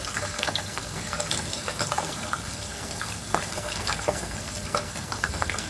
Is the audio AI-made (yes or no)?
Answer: yes